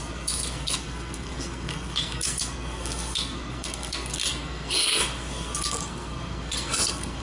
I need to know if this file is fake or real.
fake